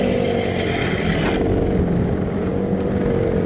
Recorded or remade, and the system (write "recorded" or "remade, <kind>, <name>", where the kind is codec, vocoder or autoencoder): recorded